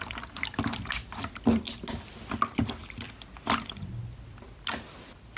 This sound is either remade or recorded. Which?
recorded